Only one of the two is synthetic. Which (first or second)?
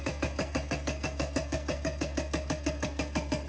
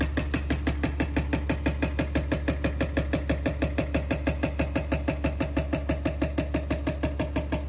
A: first